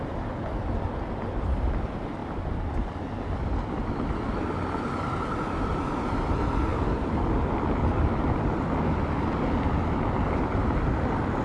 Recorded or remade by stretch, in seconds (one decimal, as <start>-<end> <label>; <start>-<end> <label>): 0.0-11.4 recorded